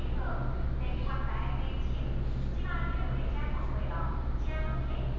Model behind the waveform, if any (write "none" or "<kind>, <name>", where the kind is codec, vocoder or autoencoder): none